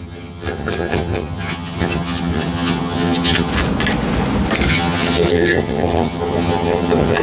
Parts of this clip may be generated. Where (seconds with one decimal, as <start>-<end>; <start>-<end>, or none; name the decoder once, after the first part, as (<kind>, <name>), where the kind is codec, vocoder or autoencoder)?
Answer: 0.0-3.5 (vocoder, HiFi-GAN); 4.7-7.2